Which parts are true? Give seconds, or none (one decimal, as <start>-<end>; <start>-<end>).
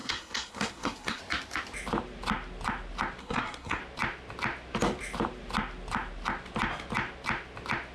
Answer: 1.2-3.2; 3.8-7.9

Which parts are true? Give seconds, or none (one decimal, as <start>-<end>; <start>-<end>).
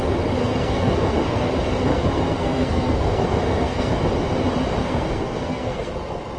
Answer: 0.0-0.4; 1.5-1.9; 3.9-4.8; 5.9-6.4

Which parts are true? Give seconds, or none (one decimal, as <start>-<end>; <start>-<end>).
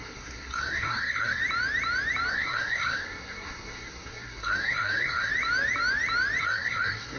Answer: 1.4-2.3; 5.3-6.4